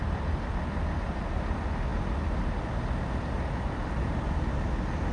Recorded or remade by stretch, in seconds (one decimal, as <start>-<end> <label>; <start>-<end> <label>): 0.0-5.1 recorded